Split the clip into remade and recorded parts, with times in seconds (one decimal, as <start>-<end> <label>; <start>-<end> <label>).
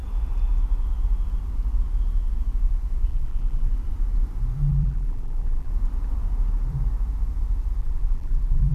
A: 0.0-3.1 recorded; 3.1-3.7 remade; 3.7-4.7 recorded; 4.7-5.7 remade; 5.7-7.8 recorded; 7.8-8.7 remade